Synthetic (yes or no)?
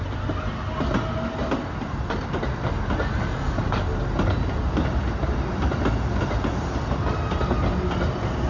no